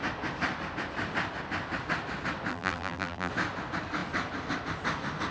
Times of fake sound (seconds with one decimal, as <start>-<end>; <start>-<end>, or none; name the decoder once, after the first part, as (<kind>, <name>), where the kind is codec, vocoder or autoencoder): 2.5-3.3 (vocoder, BigVGAN v2)